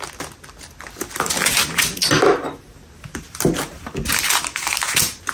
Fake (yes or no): no